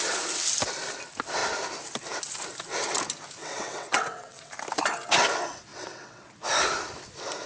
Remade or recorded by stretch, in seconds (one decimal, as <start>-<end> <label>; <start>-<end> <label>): 0.0-3.4 recorded; 3.4-4.5 remade; 4.5-5.7 recorded; 5.7-6.3 remade; 6.3-7.5 recorded